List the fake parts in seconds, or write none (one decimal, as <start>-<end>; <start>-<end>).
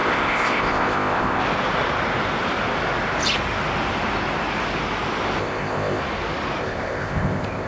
0.0-1.4; 5.4-6.0; 6.6-7.7